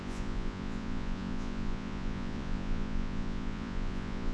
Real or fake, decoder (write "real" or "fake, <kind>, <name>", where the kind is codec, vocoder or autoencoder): fake, vocoder, Vocos